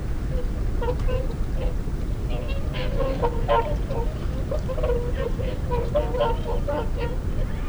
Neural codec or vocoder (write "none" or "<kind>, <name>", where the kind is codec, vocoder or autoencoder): vocoder, BigVGAN v2